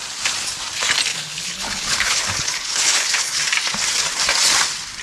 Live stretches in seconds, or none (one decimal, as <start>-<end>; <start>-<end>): 0.0-1.1; 3.4-5.0